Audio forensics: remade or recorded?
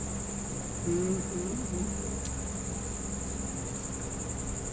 recorded